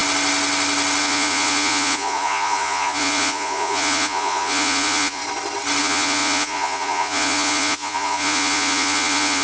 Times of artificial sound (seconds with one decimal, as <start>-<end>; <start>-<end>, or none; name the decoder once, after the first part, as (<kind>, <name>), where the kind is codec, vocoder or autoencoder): 1.0-5.2 (vocoder, Vocos); 5.8-9.4